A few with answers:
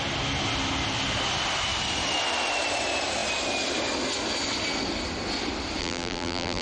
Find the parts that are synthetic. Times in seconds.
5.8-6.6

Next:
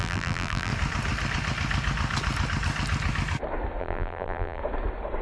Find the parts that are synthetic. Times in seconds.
0.0-0.7; 3.8-4.6

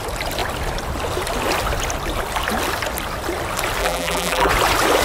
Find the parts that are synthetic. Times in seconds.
3.8-4.5

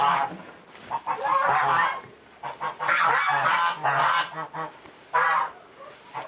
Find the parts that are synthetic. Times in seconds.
0.0-0.4; 4.2-5.3

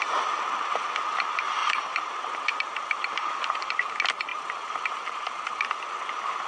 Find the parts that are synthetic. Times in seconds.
1.6-3.9; 4.3-5.7